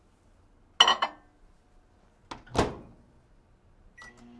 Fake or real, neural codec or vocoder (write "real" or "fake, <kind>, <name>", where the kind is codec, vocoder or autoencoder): real